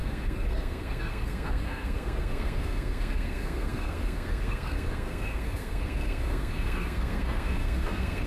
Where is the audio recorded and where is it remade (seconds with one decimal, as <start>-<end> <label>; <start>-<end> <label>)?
0.0-8.3 remade

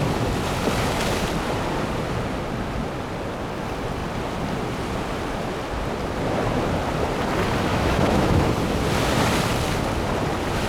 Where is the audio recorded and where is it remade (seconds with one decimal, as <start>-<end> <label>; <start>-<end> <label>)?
0.0-7.7 recorded; 7.7-8.5 remade; 8.5-10.7 recorded

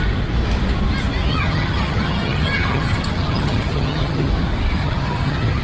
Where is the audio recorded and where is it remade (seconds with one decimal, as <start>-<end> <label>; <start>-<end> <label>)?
0.0-1.3 recorded; 1.3-4.3 remade; 4.3-4.8 recorded; 4.8-5.6 remade

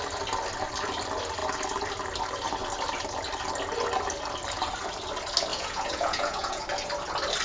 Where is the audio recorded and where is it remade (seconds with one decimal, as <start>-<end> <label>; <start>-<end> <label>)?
0.0-5.5 recorded; 5.5-6.6 remade; 6.6-7.4 recorded

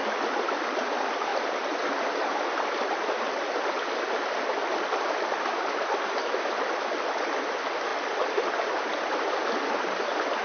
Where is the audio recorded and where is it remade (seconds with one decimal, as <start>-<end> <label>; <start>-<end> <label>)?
0.0-1.3 recorded; 1.3-1.9 remade; 1.9-7.9 recorded; 7.9-9.3 remade; 9.3-10.4 recorded